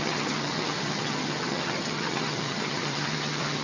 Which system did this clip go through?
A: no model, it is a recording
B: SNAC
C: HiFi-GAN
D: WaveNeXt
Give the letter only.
C